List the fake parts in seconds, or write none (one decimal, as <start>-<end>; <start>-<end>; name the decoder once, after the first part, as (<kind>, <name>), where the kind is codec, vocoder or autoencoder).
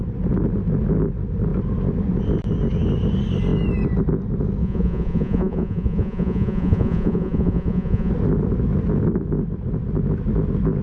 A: 4.6-8.1 (vocoder, Vocos)